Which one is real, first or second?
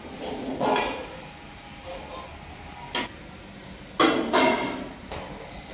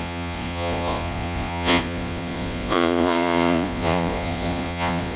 first